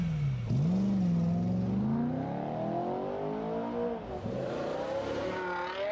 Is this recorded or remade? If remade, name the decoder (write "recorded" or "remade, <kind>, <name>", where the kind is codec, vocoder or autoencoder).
recorded